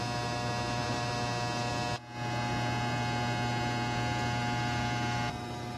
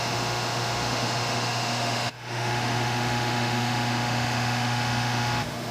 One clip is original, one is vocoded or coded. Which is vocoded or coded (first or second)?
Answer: second